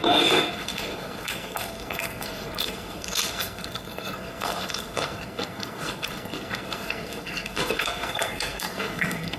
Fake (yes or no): yes